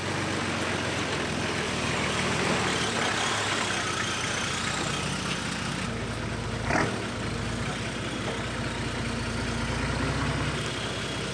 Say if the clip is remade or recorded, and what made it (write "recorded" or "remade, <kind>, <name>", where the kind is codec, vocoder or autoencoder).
recorded